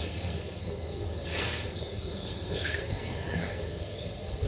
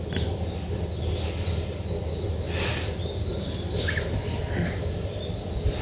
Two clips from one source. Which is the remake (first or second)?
first